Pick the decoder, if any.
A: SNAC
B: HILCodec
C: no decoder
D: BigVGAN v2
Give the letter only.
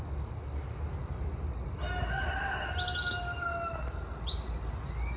C